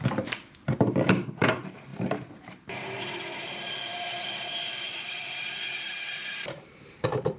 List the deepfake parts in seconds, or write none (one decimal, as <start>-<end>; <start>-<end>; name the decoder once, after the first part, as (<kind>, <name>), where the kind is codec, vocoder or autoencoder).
0.0-7.4 (vocoder, BigVGAN v2)